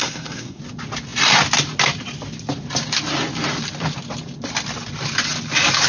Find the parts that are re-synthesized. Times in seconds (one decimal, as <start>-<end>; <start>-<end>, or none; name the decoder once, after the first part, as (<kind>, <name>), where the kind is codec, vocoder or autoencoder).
0.0-0.6 (codec, SNAC)